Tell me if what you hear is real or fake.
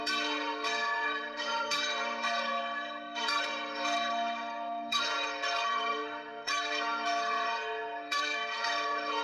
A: fake